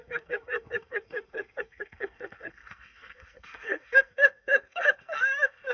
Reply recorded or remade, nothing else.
remade